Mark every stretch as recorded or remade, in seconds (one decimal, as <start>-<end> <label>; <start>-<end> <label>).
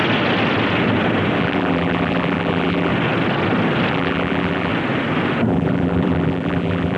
0.0-1.4 recorded; 1.4-2.9 remade; 2.9-3.9 recorded; 3.9-4.7 remade; 4.7-5.5 recorded; 5.5-7.0 remade